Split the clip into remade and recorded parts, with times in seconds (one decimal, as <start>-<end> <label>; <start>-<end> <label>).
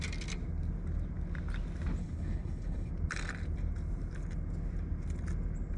0.0-2.0 recorded; 2.0-2.9 remade; 2.9-5.8 recorded